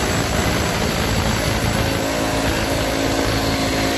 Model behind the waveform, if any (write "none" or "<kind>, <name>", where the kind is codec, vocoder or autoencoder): none